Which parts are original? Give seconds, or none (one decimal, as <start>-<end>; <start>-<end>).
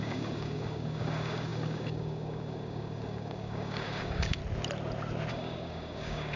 4.4-5.3